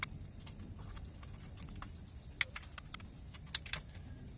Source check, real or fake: real